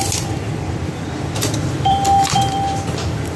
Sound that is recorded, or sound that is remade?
remade